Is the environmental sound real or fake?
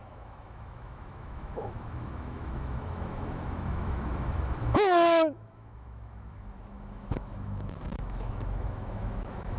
fake